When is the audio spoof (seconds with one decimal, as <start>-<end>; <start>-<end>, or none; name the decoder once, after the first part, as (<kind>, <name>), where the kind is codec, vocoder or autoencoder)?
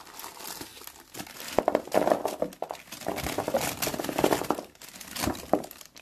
none